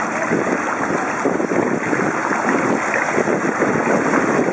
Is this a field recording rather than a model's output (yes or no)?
yes